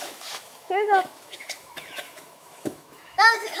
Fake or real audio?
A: fake